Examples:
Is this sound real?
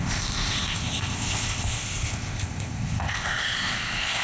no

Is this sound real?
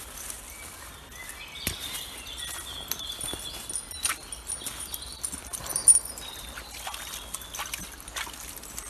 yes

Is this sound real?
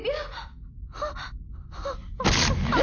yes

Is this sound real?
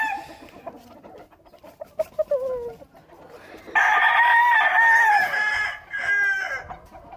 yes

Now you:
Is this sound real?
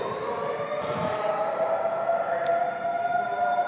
yes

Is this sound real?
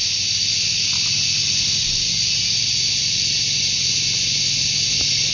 yes